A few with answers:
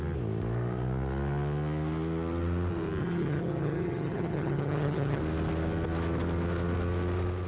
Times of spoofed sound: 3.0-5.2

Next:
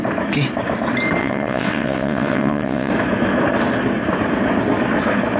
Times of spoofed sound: 1.2-2.9

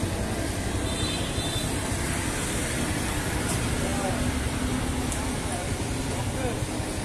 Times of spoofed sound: none